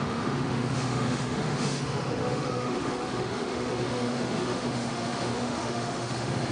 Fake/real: fake